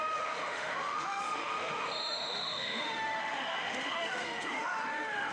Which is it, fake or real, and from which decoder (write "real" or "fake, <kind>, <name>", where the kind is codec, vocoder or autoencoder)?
fake, autoencoder, DAC-VAE